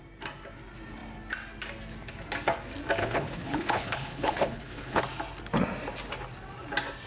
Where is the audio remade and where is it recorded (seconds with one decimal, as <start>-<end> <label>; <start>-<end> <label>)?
0.0-3.0 recorded; 3.0-5.0 remade; 5.0-7.1 recorded